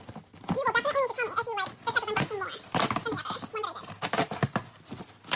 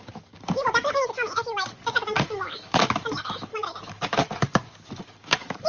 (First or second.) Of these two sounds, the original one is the first